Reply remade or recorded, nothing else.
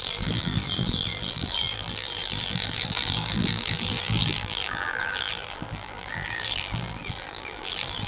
remade